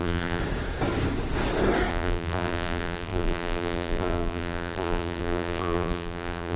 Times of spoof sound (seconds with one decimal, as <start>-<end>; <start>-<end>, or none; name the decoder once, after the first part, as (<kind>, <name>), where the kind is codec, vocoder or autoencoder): 0.0-0.4 (vocoder, BigVGAN v2); 1.9-6.6